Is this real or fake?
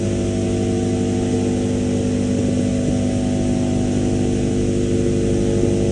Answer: real